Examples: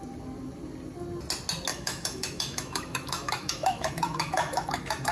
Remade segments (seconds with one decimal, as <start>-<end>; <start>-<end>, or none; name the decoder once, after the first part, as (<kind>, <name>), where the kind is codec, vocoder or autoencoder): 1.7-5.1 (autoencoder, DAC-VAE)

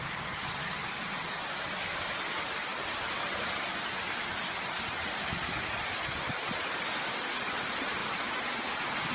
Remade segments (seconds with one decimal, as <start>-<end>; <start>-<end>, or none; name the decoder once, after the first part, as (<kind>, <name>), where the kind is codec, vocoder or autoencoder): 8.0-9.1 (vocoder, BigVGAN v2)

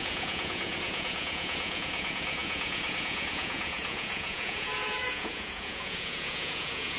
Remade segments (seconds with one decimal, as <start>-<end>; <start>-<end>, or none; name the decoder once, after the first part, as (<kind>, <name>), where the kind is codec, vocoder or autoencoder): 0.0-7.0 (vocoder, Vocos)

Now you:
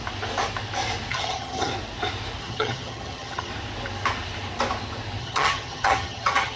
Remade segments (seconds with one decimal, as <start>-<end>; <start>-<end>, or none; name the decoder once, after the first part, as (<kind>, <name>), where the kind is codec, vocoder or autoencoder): 1.1-1.7 (vocoder, HiFi-GAN); 2.4-3.5; 5.2-6.6